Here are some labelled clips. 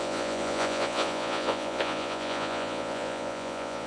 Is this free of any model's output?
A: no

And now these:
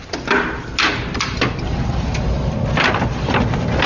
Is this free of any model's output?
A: yes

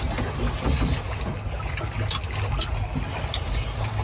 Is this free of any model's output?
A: yes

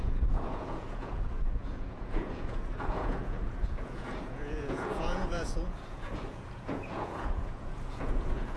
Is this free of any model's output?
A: no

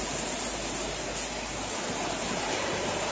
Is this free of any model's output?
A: yes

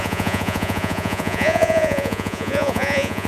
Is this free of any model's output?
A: no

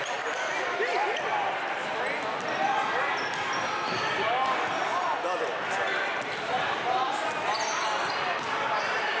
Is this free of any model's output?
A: yes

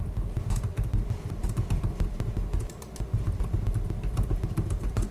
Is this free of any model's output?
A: yes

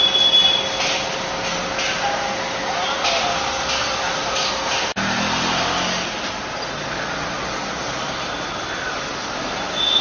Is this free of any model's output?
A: yes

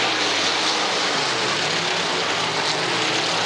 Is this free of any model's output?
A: yes